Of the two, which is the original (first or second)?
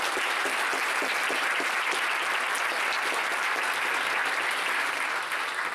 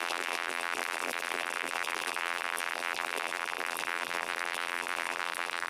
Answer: first